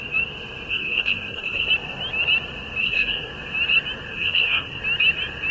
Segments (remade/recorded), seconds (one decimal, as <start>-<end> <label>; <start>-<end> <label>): 0.0-0.7 recorded; 0.7-1.7 remade; 1.7-2.8 recorded; 2.8-3.3 remade; 3.3-4.1 recorded; 4.1-4.8 remade; 4.8-5.5 recorded